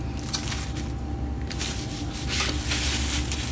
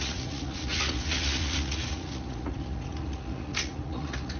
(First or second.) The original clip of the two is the first